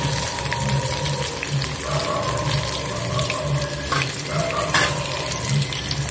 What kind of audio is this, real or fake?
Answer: fake